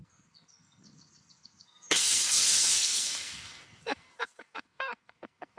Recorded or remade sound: remade